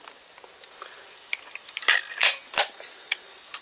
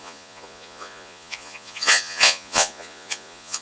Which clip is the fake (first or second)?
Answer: second